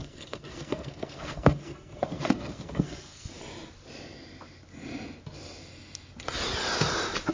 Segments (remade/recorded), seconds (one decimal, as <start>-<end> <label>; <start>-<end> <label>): 0.0-3.3 remade; 3.3-7.3 recorded